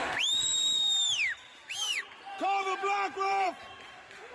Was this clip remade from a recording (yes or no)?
yes